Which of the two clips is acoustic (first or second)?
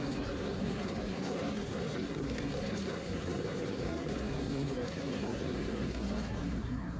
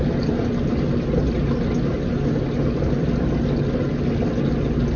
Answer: second